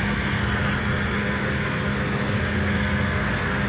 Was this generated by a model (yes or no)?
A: yes